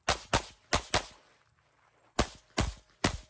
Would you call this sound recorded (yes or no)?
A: yes